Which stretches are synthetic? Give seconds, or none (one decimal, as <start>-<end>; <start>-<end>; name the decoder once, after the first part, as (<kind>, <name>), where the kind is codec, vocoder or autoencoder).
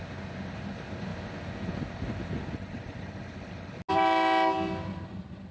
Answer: none